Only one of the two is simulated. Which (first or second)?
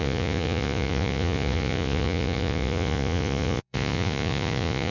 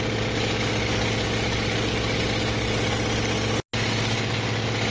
first